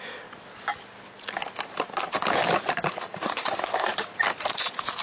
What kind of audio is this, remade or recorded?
recorded